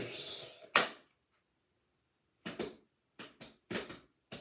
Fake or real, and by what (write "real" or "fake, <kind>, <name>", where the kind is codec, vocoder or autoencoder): real